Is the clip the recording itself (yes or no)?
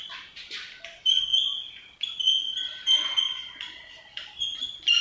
no